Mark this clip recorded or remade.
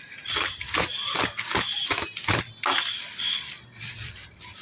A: remade